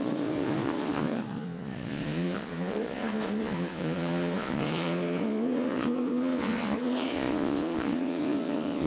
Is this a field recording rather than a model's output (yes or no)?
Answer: no